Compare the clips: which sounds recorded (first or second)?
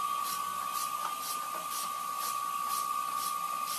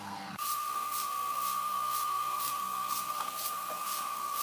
first